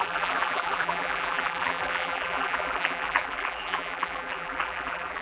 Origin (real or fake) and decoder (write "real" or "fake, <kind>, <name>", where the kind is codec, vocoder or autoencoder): fake, vocoder, BigVGAN v2